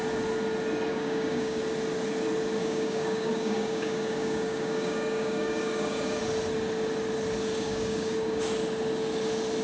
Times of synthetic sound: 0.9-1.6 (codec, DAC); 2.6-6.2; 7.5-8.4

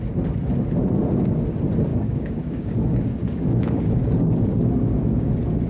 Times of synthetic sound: 1.9-5.3 (codec, DAC)

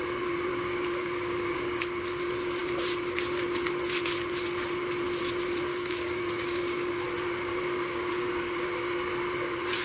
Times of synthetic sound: 0.5-1.8 (codec, DAC); 5.7-6.9; 7.5-9.1

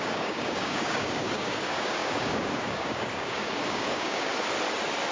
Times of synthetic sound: 0.0-4.3 (codec, DAC)

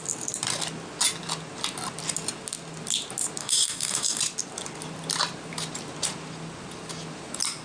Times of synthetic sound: 3.4-4.2 (codec, DAC)